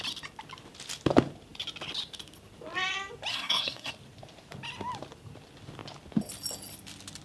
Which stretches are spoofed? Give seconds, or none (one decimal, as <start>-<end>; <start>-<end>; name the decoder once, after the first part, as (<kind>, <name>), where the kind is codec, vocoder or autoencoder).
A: 3.3-3.9 (codec, SNAC)